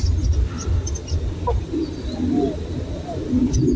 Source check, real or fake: real